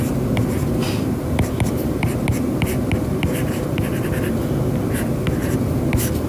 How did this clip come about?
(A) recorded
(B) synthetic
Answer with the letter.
A